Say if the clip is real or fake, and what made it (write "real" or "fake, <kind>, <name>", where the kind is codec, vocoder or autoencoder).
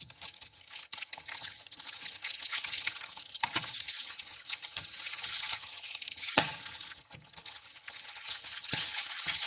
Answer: fake, vocoder, HiFi-GAN